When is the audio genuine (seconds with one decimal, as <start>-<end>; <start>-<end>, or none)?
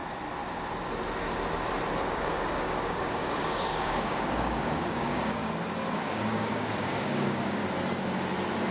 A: 0.0-2.0; 5.4-6.1; 7.6-8.7